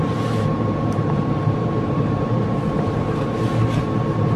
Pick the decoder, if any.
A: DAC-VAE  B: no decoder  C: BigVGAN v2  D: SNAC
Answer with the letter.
C